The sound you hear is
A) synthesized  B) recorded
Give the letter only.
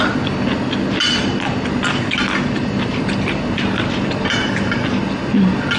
B